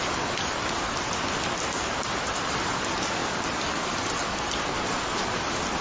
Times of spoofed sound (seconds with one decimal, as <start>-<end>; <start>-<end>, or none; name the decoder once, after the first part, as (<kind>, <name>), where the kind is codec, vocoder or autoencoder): none

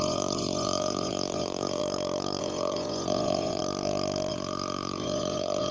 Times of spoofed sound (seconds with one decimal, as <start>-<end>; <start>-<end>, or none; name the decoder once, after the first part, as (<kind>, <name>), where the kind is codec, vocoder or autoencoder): 0.0-1.8 (vocoder, Vocos); 2.4-3.6; 4.3-5.7